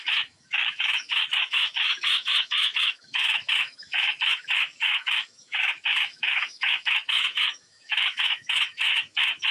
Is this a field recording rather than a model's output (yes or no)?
no